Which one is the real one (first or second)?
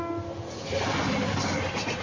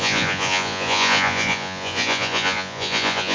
first